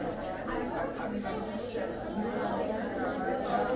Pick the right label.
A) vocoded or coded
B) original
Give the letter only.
B